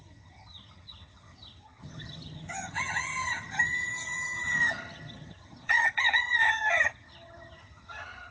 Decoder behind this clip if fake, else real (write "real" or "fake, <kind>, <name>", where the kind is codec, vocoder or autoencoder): fake, vocoder, HiFi-GAN